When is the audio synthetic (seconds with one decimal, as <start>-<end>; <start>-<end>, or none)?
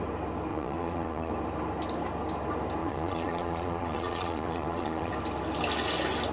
0.5-1.3; 2.8-5.1